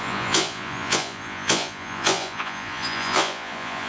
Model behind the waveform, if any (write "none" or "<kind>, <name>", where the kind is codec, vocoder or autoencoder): vocoder, Vocos